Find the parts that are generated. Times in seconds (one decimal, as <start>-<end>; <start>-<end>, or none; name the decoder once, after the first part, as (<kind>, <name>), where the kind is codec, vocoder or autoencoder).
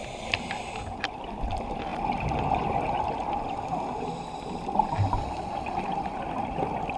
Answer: none